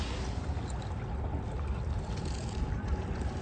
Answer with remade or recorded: recorded